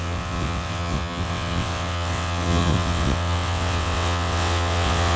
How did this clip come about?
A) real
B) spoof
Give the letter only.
B